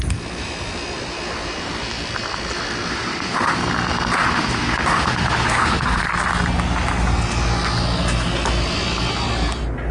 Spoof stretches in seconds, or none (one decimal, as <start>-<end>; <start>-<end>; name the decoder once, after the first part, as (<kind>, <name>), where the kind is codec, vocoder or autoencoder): 2.9-3.6 (autoencoder, DAC-VAE); 4.2-6.0